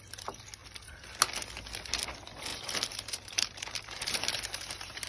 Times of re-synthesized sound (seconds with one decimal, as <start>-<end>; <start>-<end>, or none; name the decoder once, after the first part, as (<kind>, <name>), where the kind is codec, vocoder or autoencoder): 2.5-5.1 (vocoder, BigVGAN v2)

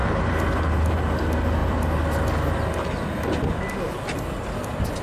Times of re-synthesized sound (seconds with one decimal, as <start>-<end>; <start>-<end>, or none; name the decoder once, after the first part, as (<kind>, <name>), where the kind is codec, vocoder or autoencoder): 0.0-1.0 (vocoder, BigVGAN v2); 1.6-2.1

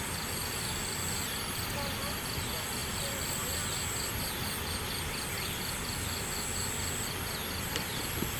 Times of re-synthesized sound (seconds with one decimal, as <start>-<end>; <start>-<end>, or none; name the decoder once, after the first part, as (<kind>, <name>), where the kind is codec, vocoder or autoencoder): none

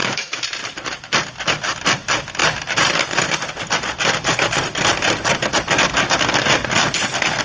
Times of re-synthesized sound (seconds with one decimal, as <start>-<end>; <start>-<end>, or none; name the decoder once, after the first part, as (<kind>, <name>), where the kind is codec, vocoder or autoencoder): 0.0-1.1 (vocoder, BigVGAN v2); 2.4-5.6

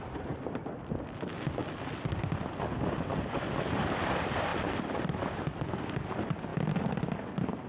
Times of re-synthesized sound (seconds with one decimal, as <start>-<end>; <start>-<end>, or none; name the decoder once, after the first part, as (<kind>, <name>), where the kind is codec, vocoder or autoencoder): 0.0-1.6 (vocoder, BigVGAN v2); 3.2-6.5; 7.2-7.7

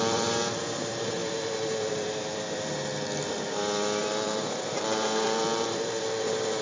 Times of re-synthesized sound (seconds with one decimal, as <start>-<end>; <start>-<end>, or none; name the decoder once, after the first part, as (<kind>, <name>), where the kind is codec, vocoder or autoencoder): 0.0-2.9 (vocoder, BigVGAN v2); 4.0-6.6

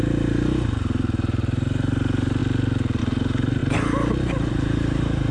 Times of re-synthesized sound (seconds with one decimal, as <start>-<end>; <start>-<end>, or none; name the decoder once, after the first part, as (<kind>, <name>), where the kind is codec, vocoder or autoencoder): 0.0-2.4 (vocoder, BigVGAN v2); 3.0-3.6; 4.5-5.3

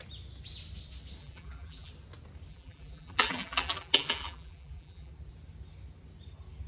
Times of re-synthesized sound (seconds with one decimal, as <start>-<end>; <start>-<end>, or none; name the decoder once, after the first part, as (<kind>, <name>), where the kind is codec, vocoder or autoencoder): 1.2-1.9 (vocoder, BigVGAN v2); 2.5-5.1